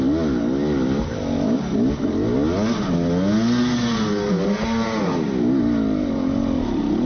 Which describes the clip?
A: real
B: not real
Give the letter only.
A